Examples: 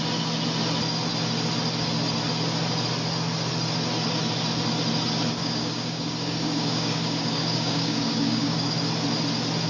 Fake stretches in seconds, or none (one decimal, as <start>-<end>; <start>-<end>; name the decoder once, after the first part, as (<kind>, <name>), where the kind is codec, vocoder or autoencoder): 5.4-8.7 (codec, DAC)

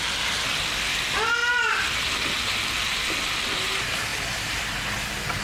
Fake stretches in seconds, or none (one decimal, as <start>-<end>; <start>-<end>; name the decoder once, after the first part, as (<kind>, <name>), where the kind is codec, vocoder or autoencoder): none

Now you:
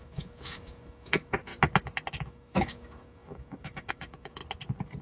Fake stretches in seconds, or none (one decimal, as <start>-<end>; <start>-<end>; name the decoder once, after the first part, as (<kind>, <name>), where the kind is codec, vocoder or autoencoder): 0.0-1.5 (autoencoder, DAC-VAE); 2.1-4.4

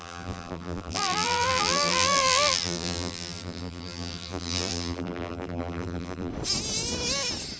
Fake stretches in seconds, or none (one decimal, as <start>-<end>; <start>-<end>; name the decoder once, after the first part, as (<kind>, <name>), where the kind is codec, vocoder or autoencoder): 0.0-6.3 (vocoder, BigVGAN v2)

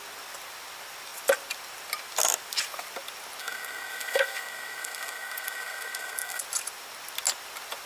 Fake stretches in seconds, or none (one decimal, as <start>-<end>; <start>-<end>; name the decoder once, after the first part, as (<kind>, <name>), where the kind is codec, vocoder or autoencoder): 3.4-6.4 (codec, SNAC)